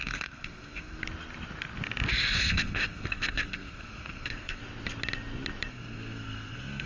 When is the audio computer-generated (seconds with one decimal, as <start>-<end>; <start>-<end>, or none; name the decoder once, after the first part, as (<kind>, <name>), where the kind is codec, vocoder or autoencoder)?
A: 0.0-1.0 (codec, SNAC); 2.1-4.6; 5.7-6.9